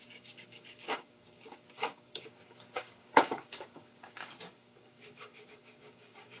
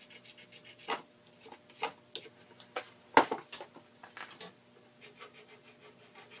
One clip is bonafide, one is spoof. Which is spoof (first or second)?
first